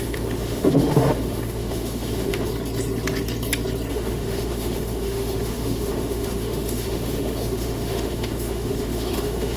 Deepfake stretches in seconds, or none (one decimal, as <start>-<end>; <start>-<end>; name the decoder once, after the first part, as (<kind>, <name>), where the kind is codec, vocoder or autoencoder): 0.0-2.5 (autoencoder, DAC-VAE); 3.9-9.6

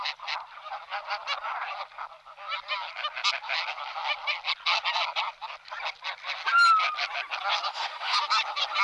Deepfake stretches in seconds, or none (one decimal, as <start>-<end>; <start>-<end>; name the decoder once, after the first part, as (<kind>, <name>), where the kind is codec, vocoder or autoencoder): 7.7-8.2 (autoencoder, DAC-VAE)